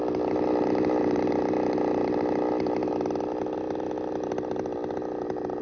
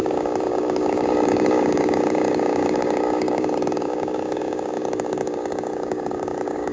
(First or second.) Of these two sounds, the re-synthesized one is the second